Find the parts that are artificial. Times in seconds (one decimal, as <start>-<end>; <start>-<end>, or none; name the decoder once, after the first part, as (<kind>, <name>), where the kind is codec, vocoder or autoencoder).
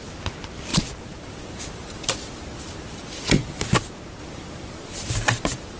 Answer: none